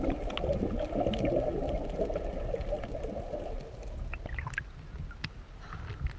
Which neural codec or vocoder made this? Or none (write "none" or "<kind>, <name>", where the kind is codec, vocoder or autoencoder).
none